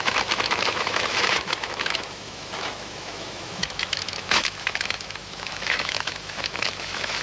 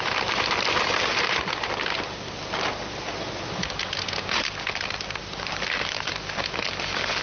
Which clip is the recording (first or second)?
second